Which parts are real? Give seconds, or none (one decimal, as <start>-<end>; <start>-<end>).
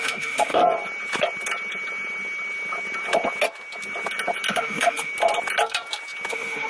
0.6-4.5; 5.1-6.3